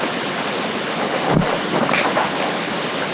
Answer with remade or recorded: recorded